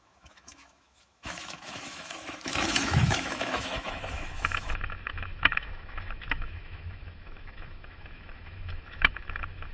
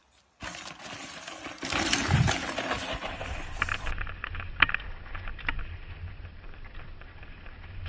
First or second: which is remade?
first